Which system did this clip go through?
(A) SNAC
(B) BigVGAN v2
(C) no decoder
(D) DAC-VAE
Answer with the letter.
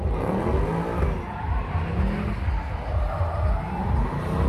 C